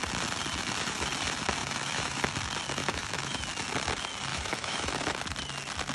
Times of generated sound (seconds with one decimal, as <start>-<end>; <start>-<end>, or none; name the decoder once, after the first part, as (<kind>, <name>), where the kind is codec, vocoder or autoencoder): 1.6-2.3 (autoencoder, DAC-VAE); 2.8-3.4; 4.3-5.2